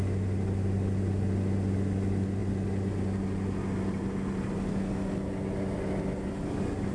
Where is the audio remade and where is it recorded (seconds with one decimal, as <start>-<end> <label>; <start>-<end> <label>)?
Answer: 0.0-6.9 recorded